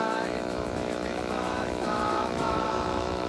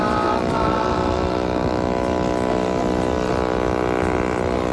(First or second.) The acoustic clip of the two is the second